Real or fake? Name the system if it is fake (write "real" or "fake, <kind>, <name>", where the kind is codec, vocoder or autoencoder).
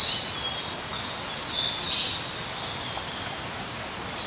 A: real